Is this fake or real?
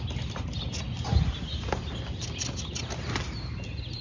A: real